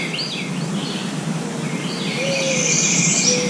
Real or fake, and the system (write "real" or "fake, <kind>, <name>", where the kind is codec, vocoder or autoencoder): real